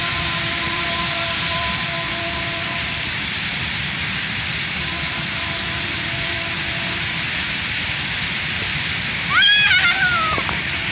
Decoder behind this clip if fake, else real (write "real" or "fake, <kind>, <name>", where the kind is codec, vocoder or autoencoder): fake, vocoder, BigVGAN v2